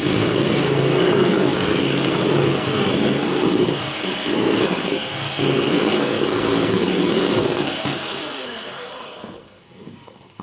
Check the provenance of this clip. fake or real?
fake